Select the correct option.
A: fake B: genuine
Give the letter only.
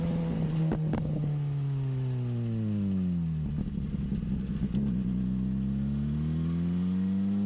B